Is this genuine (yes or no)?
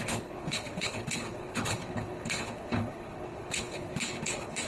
no